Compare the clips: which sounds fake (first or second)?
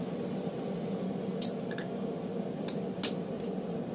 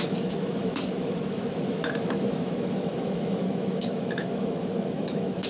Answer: second